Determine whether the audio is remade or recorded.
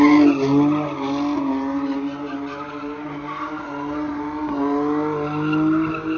recorded